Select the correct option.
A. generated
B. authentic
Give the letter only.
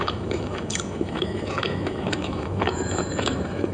A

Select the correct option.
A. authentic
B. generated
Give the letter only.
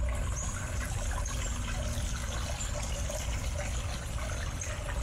A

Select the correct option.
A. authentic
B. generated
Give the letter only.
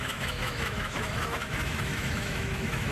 B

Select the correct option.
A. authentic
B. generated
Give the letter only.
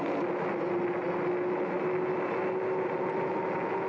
A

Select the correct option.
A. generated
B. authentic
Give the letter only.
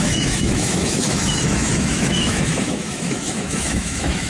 A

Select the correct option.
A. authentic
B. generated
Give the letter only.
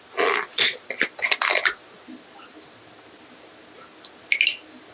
A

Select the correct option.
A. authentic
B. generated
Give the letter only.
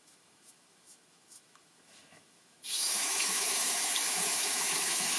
B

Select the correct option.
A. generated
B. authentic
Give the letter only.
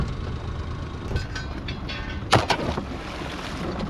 B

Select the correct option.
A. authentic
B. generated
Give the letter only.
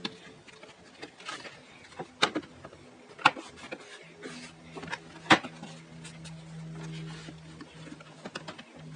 A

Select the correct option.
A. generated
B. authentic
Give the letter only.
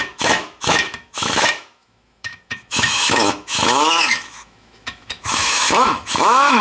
A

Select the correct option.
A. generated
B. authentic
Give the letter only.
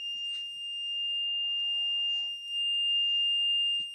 B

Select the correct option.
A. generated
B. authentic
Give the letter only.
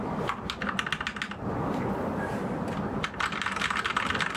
B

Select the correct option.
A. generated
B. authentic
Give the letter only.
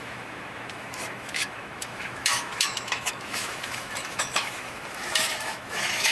A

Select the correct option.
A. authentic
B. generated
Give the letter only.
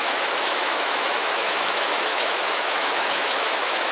B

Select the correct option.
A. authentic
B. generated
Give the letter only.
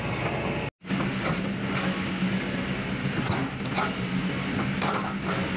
A